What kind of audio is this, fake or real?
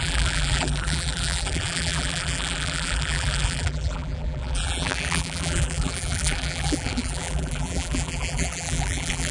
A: fake